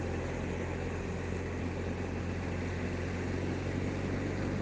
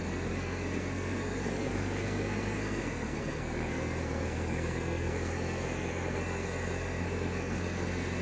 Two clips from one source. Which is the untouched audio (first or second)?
first